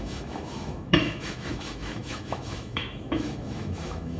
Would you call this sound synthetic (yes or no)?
yes